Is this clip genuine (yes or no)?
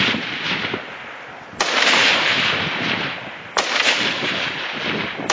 yes